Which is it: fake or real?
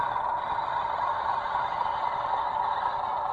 real